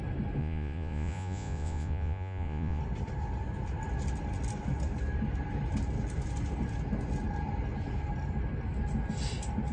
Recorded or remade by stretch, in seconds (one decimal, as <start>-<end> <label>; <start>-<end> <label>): 0.0-0.4 recorded; 0.4-2.8 remade; 2.8-9.7 recorded